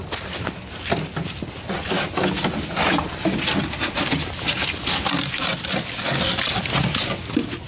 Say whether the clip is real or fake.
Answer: real